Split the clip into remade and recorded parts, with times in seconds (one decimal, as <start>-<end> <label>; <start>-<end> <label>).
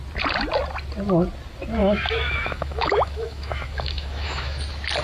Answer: 0.0-1.8 recorded; 1.8-4.6 remade; 4.6-5.0 recorded